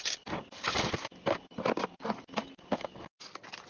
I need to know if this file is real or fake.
real